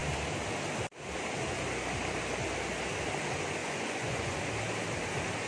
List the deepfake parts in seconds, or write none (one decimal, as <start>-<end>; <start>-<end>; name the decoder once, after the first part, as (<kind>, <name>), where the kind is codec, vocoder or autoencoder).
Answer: 3.6-4.4 (vocoder, Vocos)